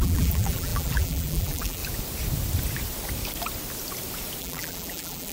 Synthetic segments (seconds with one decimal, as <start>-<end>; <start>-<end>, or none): 0.0-1.8; 4.4-5.3